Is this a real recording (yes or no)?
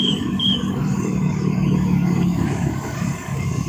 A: no